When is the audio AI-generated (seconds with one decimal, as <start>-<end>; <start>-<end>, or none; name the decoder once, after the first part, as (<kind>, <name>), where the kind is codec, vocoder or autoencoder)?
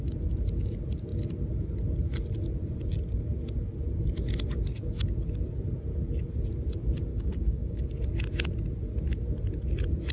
7.1-7.8 (codec, DAC)